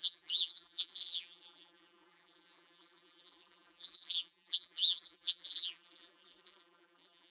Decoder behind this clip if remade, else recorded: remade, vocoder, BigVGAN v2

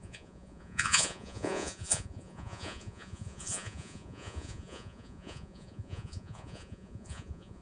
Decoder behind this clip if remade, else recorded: remade, vocoder, Vocos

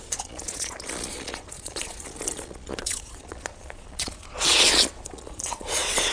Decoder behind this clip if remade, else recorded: remade, vocoder, Vocos